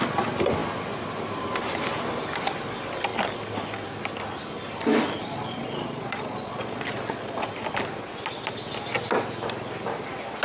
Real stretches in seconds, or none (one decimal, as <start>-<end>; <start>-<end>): 0.0-5.2; 7.5-10.4